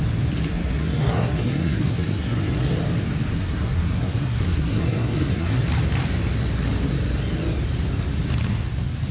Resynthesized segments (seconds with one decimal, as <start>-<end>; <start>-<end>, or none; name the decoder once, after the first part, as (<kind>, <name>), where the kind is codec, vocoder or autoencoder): 0.4-2.8 (codec, SNAC); 3.3-5.6